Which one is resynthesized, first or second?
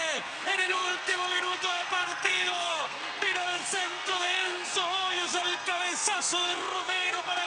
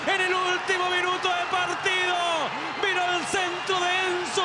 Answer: first